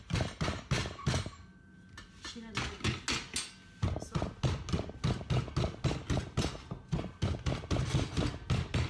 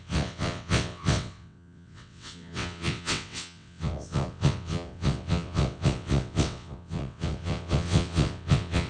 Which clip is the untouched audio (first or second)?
first